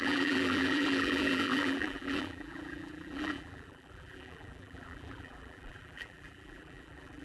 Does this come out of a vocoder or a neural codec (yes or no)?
yes